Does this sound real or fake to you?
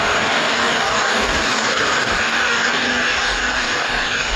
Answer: fake